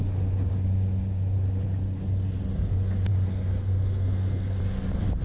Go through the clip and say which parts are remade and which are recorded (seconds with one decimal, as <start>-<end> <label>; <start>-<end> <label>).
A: 0.0-3.1 recorded; 3.1-4.6 remade; 4.6-5.2 recorded